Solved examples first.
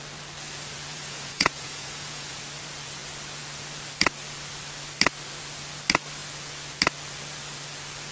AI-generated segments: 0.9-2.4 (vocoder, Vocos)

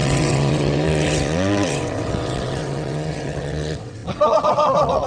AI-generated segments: 0.0-5.1 (vocoder, WaveNeXt)

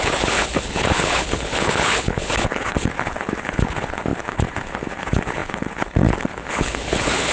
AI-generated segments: 0.0-7.3 (codec, HILCodec)

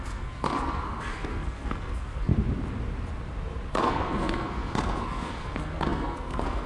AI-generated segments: 0.0-2.3 (codec, SNAC); 3.7-6.7

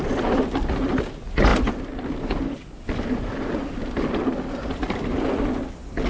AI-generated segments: none

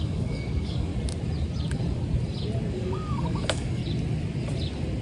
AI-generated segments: 0.0-0.9 (codec, DAC); 2.7-3.8